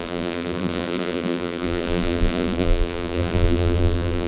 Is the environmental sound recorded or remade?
remade